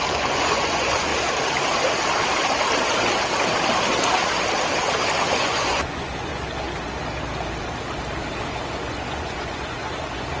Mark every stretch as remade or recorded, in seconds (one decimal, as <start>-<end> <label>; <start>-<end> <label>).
0.0-1.1 remade; 1.1-5.4 recorded; 5.4-6.3 remade; 6.3-8.5 recorded; 8.5-10.4 remade